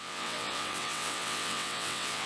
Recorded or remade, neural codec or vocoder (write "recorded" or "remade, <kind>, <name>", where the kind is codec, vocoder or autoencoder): remade, vocoder, WaveNeXt